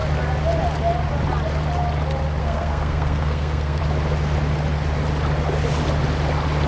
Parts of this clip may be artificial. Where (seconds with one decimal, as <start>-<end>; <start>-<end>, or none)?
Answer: 2.4-3.8